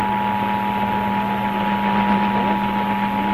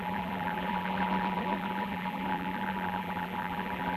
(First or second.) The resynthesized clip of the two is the second